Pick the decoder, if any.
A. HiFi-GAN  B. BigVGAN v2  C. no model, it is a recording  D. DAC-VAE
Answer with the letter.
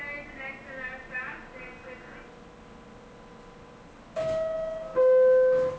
C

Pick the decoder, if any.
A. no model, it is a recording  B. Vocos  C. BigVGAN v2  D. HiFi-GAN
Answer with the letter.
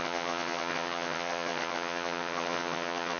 D